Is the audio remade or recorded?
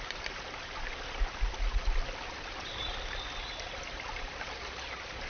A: recorded